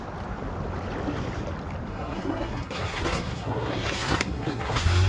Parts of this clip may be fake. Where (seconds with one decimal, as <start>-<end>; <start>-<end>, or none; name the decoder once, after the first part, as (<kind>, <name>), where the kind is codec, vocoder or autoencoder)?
1.9-5.1 (codec, SNAC)

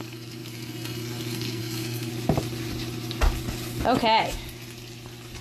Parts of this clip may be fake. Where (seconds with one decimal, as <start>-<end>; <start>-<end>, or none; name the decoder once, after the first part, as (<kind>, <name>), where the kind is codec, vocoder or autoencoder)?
0.0-2.1 (codec, SNAC)

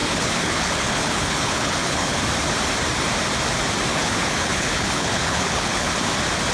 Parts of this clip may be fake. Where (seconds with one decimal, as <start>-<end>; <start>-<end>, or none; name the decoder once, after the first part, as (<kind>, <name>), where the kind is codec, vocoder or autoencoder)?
0.0-2.2 (codec, HILCodec); 3.9-5.9

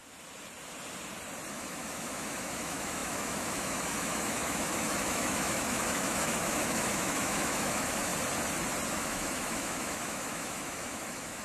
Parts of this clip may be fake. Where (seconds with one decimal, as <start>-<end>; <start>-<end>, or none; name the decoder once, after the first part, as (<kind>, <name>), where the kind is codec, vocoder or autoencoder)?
1.5-8.1 (autoencoder, DAC-VAE); 8.9-11.4

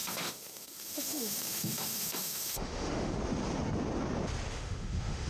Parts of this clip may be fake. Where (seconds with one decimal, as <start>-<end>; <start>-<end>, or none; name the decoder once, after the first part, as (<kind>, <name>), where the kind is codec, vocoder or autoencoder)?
0.0-3.2 (autoencoder, DAC-VAE); 4.5-5.3

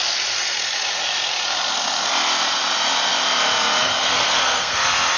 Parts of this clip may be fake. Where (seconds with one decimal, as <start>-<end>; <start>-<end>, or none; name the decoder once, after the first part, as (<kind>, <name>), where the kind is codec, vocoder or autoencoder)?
3.8-4.8 (codec, SNAC)